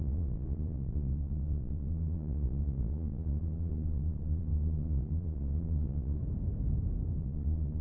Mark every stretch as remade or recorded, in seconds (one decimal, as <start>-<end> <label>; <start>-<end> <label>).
0.0-6.2 remade; 6.2-7.2 recorded; 7.2-7.8 remade